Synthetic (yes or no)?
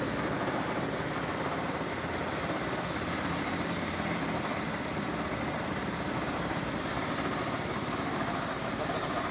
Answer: no